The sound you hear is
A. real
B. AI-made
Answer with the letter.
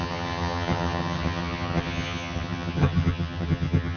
B